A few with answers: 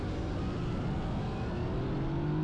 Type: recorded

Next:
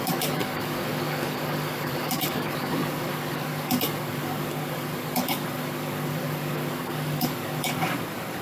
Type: remade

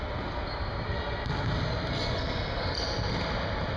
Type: recorded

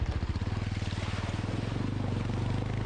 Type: recorded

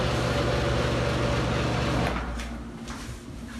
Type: recorded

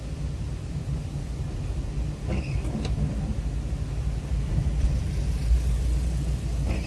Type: recorded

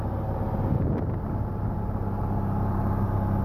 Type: recorded